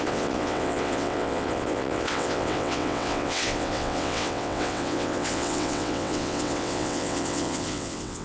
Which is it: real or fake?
fake